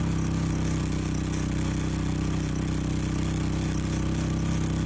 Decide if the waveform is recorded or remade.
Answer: recorded